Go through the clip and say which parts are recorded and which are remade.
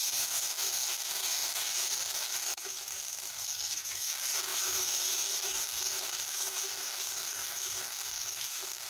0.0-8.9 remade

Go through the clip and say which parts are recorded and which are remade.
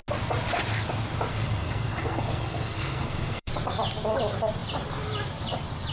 0.0-1.3 recorded; 1.3-3.5 remade; 3.5-5.9 recorded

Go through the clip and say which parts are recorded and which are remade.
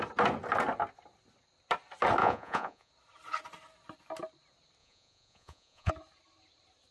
0.0-2.2 recorded; 2.2-2.9 remade; 2.9-4.8 recorded; 4.8-5.9 remade; 5.9-6.9 recorded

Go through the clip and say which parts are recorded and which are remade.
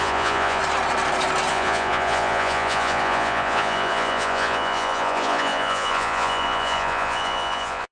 0.0-0.6 remade; 0.6-1.5 recorded; 1.5-7.9 remade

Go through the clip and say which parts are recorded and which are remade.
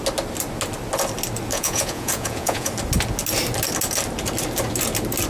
0.0-1.5 recorded; 1.5-2.7 remade; 2.7-5.3 recorded